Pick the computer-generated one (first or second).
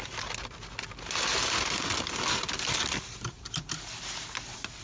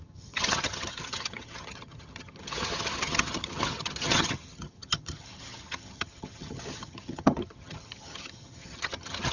second